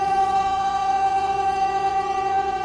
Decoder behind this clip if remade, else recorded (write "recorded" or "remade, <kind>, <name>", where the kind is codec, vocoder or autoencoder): remade, vocoder, Vocos